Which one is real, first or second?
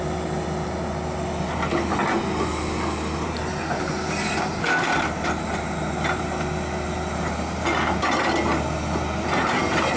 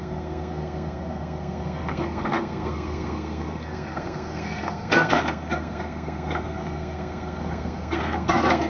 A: first